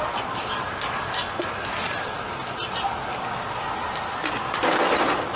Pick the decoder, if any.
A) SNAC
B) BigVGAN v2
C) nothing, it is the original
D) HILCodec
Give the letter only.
C